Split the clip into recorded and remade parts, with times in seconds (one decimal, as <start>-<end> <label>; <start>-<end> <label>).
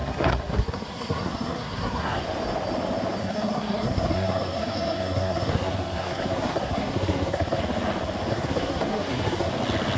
0.0-2.2 remade; 2.2-3.2 recorded; 3.2-7.6 remade; 7.6-8.3 recorded; 8.3-9.5 remade; 9.5-10.0 recorded